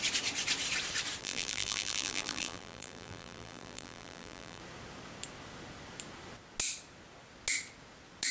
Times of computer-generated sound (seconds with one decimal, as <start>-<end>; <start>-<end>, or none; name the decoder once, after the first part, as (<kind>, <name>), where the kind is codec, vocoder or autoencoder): 1.2-4.6 (vocoder, BigVGAN v2)